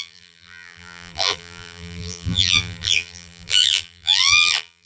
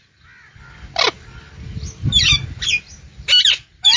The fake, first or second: first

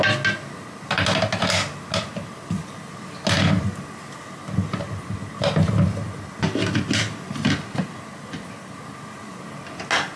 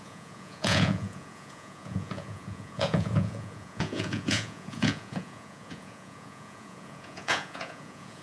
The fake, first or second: second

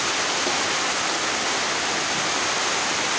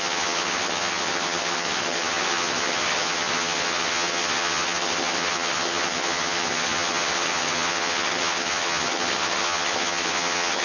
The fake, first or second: second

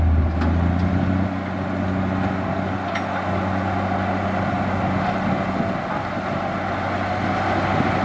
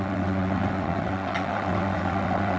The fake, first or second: second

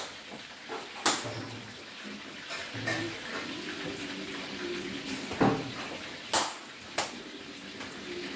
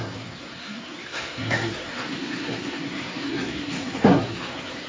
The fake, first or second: second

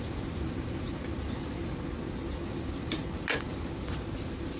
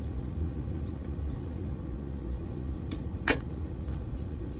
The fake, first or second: second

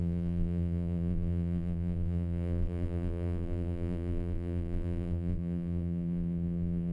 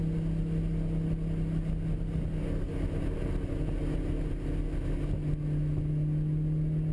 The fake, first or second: first